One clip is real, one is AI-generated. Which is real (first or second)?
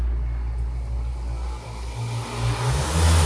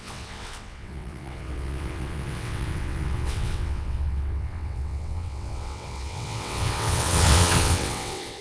first